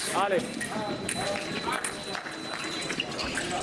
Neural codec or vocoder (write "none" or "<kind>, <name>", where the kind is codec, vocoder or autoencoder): none